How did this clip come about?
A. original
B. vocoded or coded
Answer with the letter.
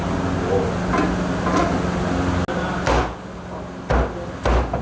A